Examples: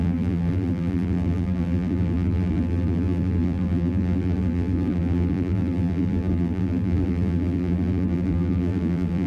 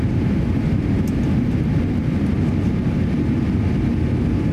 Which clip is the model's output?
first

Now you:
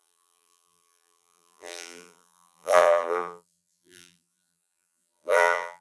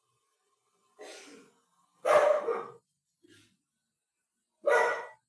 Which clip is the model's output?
first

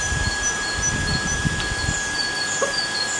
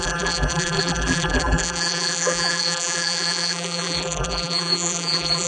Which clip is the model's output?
second